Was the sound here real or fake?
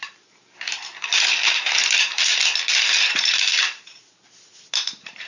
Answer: fake